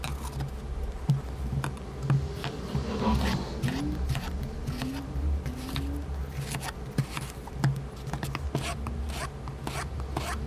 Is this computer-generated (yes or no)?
no